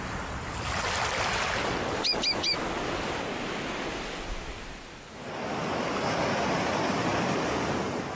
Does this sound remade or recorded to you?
recorded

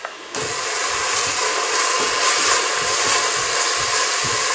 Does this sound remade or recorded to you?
recorded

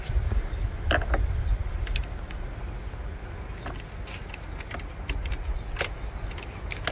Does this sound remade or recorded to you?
recorded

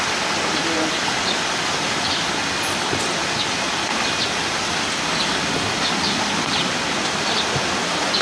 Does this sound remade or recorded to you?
recorded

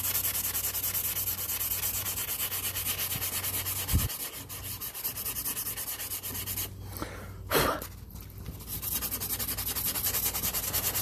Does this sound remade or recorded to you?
recorded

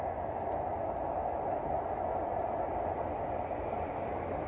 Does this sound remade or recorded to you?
recorded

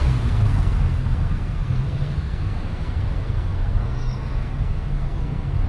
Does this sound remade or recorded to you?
remade